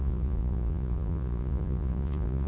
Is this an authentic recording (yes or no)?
no